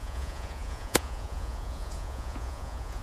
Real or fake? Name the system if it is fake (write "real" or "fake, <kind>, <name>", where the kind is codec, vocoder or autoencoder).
fake, vocoder, Vocos